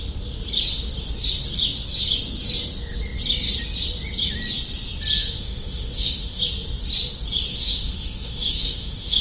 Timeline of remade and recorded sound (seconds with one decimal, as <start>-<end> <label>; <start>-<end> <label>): 0.0-5.2 recorded; 5.2-6.4 remade; 6.4-7.5 recorded; 7.5-9.2 remade